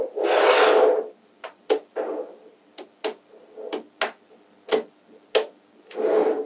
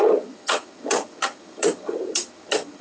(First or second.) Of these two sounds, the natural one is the first